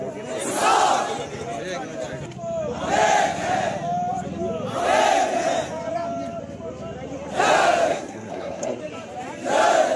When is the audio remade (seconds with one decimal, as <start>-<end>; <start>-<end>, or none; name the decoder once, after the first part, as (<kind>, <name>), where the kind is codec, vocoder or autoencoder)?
7.9-8.8 (codec, SNAC)